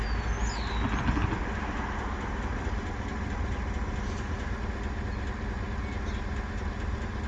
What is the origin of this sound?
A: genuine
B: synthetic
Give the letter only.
A